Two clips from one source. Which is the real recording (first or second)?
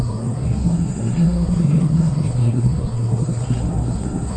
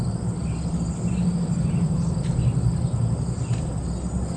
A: second